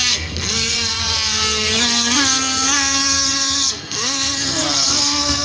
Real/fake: fake